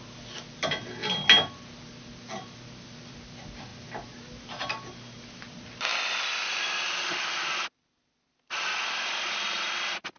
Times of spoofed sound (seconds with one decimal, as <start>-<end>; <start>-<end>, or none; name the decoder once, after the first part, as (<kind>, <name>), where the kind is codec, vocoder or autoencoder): none